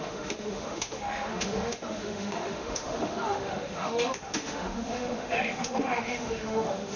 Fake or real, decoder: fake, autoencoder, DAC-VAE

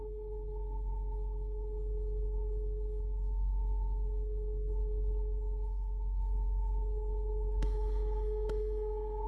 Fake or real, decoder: fake, codec, HILCodec